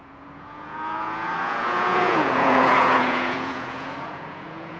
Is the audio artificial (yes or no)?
yes